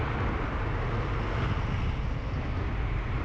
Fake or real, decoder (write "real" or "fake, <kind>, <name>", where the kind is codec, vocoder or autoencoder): real